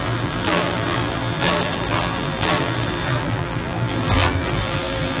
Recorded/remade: remade